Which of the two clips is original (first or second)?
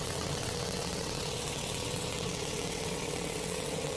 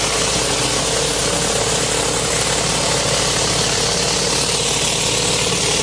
second